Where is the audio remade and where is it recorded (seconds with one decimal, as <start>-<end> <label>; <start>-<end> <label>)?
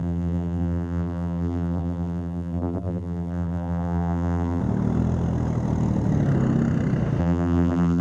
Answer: 0.0-4.6 remade; 4.6-7.2 recorded; 7.2-8.0 remade